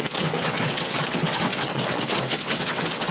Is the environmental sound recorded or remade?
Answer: remade